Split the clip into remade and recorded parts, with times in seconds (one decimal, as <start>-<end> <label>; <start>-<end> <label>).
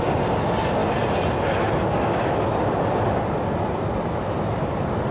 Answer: 0.0-5.1 recorded